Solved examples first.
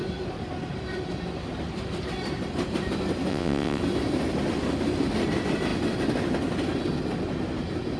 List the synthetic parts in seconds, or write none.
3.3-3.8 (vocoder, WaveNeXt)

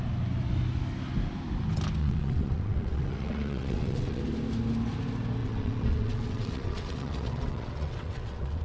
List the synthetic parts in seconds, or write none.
2.0-4.2 (vocoder, WaveNeXt); 5.4-8.6

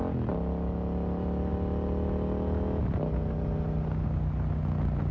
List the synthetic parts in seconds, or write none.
none

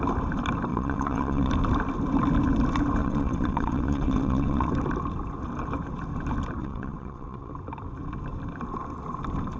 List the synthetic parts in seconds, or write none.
0.7-1.5 (vocoder, WaveNeXt); 3.0-4.7; 6.6-7.5

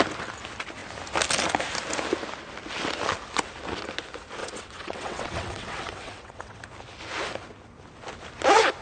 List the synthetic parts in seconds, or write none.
4.4-6.6 (vocoder, WaveNeXt)

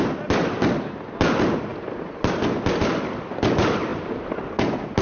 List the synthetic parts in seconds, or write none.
none